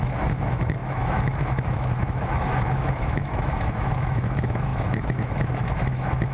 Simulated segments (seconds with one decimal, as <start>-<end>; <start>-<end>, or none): 0.0-6.3